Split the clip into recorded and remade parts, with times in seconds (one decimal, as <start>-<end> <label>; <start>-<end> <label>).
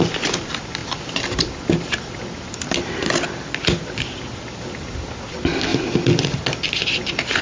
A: 0.0-7.4 recorded